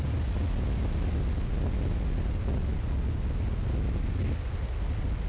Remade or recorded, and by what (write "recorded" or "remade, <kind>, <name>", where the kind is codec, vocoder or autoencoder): recorded